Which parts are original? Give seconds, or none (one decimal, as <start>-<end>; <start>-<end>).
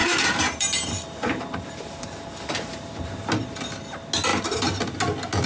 3.3-4.3; 4.9-5.5